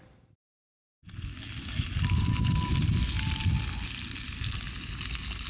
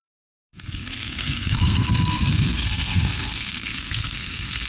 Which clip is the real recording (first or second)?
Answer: first